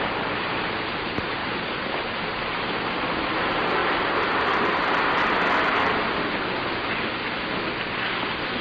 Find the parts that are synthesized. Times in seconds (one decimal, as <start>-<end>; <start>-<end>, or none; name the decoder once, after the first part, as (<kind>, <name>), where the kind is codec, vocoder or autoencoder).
none